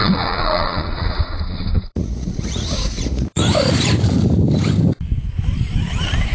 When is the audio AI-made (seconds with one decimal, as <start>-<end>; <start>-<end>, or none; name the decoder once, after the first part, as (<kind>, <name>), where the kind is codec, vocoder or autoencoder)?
0.0-3.4 (vocoder, Vocos)